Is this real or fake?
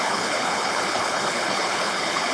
fake